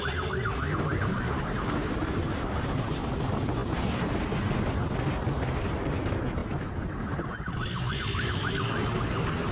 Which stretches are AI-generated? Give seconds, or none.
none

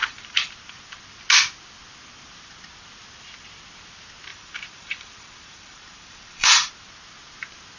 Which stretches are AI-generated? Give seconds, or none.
0.0-0.5; 4.3-6.7

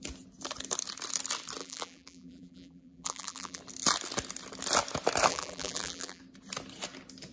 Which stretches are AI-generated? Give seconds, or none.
1.6-3.6; 5.3-6.2